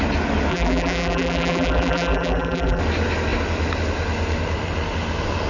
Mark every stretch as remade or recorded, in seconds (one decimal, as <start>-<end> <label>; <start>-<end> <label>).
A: 0.0-0.5 recorded; 0.5-2.8 remade; 2.8-5.5 recorded